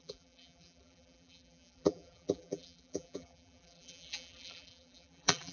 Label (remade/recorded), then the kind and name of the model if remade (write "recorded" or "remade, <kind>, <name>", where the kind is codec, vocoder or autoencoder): remade, vocoder, BigVGAN v2